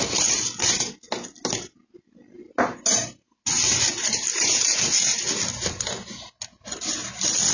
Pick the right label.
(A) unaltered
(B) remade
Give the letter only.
A